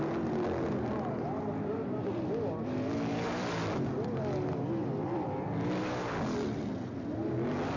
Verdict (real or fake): real